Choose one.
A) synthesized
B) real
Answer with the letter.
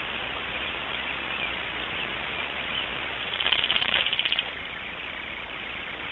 A